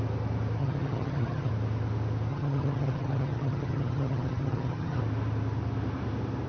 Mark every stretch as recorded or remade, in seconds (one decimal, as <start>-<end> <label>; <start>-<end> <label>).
0.0-0.6 recorded; 0.6-1.5 remade; 1.5-2.3 recorded; 2.3-5.0 remade; 5.0-6.5 recorded